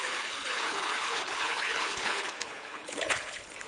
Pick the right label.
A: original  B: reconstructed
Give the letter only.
B